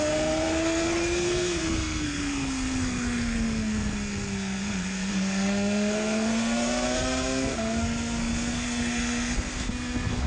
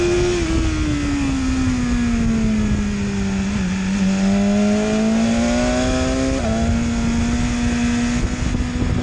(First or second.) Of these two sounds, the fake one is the first